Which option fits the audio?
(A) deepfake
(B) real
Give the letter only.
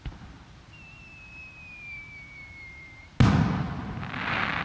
B